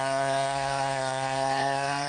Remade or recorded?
remade